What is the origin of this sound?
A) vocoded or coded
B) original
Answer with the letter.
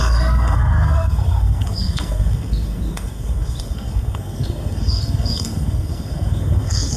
A